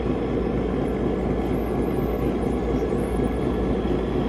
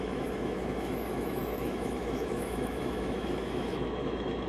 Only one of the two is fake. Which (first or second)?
second